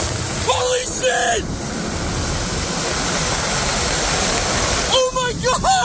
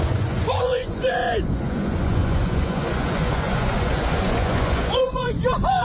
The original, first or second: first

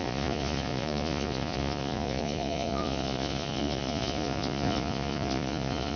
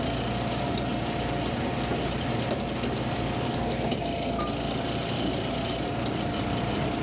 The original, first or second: second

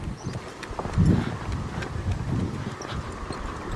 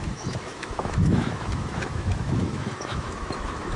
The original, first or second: first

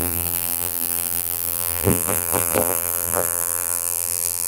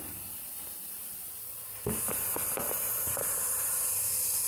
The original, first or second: second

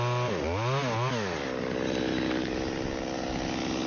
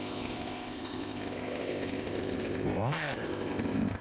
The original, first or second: first